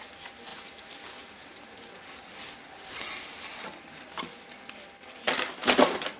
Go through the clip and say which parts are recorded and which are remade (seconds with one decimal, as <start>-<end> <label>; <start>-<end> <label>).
0.0-6.2 recorded